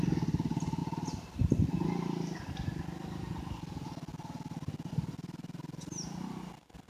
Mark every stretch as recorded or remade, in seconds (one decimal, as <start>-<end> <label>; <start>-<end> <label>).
0.0-6.9 recorded